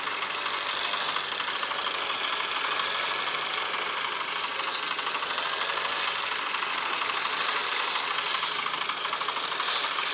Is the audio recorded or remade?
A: recorded